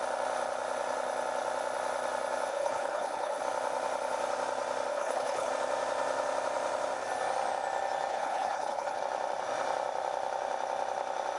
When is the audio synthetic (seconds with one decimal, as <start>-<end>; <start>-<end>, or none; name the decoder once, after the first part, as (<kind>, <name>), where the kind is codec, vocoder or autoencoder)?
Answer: 2.5-3.4 (codec, HILCodec); 4.9-5.5; 8.1-9.0